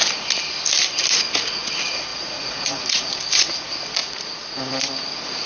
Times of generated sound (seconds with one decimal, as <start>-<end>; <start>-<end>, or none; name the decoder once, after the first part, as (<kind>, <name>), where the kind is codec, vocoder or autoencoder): 2.1-3.2 (vocoder, Vocos); 4.0-4.6